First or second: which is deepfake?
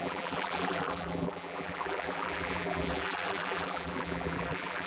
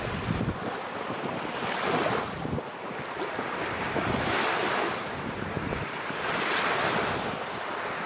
first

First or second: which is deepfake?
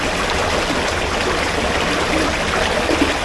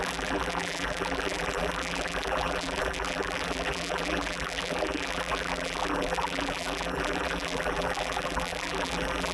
second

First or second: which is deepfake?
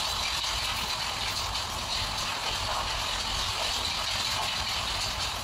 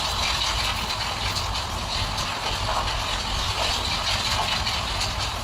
first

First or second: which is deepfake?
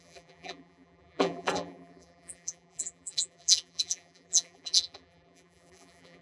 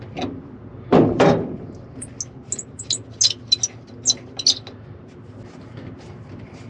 first